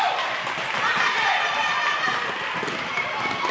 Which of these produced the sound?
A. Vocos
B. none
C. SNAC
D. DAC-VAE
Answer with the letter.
B